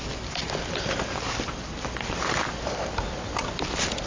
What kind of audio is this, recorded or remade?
recorded